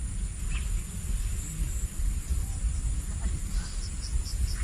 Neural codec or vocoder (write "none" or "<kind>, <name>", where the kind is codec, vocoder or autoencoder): none